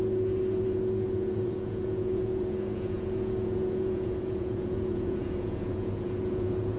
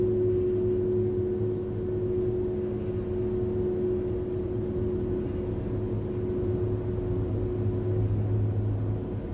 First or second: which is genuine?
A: second